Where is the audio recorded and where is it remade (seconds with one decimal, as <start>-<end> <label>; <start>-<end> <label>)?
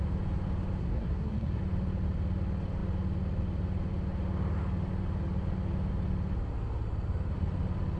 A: 0.0-0.8 recorded; 0.8-1.6 remade; 1.6-8.0 recorded